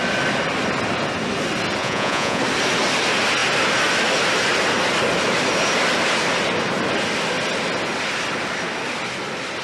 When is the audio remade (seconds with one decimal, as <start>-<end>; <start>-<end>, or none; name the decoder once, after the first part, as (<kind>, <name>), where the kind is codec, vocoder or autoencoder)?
1.8-2.4 (vocoder, Vocos)